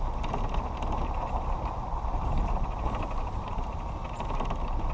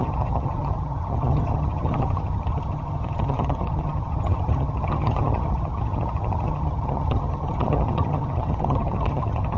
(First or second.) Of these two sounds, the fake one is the second